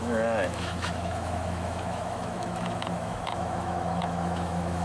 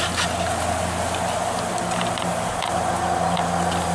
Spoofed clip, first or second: first